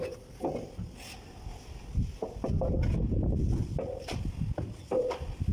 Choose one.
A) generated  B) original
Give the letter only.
B